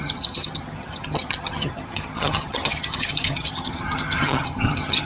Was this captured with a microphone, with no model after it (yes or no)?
no